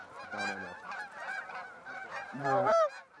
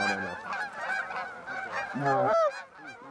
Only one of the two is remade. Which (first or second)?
first